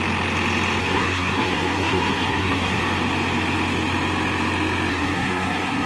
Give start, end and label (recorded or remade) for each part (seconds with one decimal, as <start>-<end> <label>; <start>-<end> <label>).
0.0-0.8 recorded; 0.8-2.8 remade; 2.8-4.9 recorded; 4.9-5.9 remade